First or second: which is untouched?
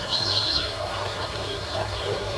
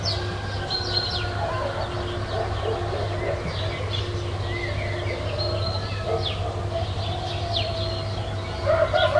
second